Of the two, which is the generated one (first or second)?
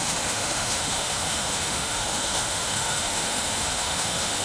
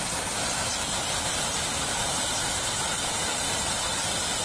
first